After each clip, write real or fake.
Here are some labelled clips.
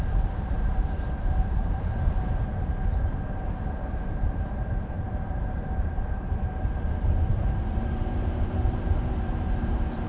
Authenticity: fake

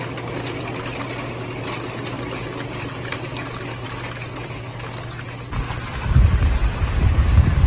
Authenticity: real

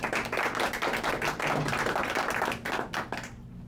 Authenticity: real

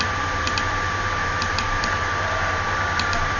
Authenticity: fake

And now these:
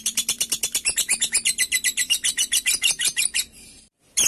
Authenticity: fake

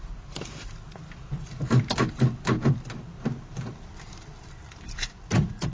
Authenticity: fake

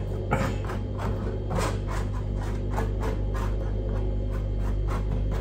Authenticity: real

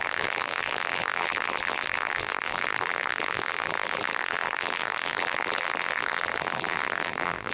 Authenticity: fake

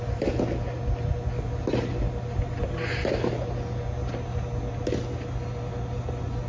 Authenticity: real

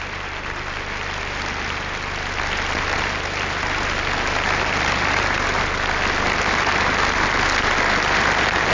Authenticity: real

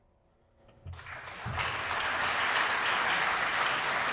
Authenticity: real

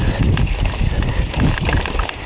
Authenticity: real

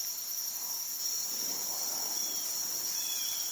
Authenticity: real